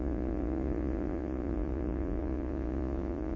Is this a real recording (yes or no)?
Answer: no